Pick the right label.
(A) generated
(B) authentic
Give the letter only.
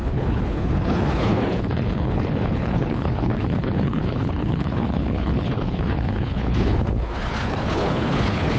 A